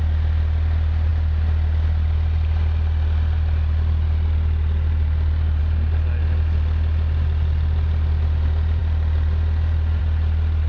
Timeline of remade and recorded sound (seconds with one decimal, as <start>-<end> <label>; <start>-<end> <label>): 0.0-10.7 recorded